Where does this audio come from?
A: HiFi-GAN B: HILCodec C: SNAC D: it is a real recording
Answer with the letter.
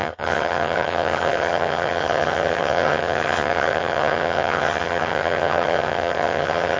A